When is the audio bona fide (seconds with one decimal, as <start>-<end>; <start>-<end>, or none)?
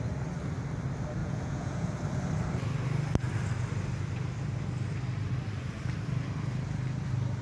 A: 0.0-1.2; 1.9-7.4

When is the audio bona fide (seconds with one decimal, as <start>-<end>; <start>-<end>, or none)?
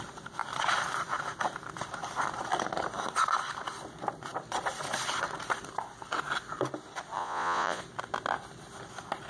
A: 0.0-7.2; 7.8-9.3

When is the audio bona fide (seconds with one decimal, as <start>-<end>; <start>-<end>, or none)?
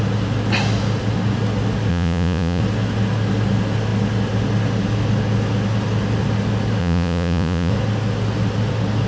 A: 0.0-1.9; 2.6-6.8; 7.7-9.1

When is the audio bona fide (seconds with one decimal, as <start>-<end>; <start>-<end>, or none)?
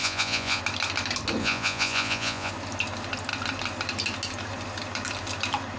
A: 0.6-1.4; 2.5-5.8